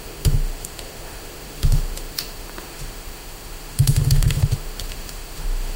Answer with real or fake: fake